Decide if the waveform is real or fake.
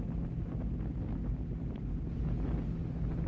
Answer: real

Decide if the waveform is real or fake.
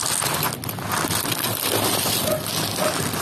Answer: real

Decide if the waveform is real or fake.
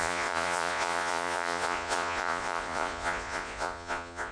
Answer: fake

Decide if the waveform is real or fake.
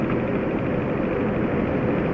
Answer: real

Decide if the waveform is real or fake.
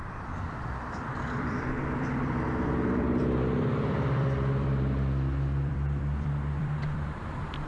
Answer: fake